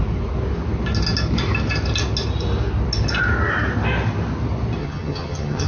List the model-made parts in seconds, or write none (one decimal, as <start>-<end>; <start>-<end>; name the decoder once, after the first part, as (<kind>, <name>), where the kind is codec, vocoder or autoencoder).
4.8-5.7 (vocoder, HiFi-GAN)